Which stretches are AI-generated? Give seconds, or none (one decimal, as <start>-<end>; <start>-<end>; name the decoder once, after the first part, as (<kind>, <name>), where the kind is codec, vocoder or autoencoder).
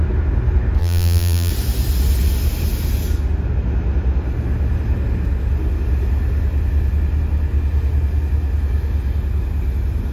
0.8-1.5 (vocoder, BigVGAN v2)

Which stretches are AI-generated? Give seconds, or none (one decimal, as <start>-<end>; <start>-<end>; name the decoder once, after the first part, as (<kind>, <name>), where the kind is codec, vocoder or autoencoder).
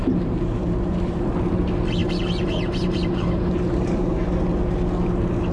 0.0-1.3 (vocoder, BigVGAN v2); 2.0-4.1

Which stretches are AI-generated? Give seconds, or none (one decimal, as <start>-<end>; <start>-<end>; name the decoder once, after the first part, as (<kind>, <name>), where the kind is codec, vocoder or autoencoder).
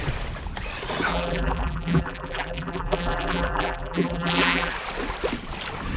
1.1-4.7 (vocoder, BigVGAN v2)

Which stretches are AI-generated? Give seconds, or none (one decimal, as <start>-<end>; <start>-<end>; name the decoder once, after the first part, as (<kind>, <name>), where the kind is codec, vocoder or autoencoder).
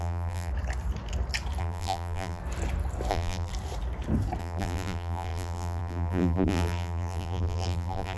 0.0-0.5 (vocoder, BigVGAN v2); 1.6-2.4; 3.1-3.5; 4.4-8.2